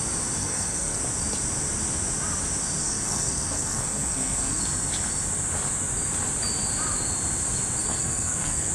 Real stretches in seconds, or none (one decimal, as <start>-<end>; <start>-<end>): 0.0-0.4; 1.0-2.8; 4.6-7.8